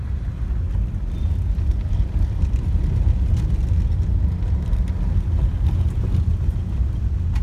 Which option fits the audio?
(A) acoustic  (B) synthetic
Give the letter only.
A